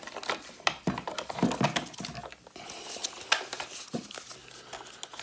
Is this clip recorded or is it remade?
recorded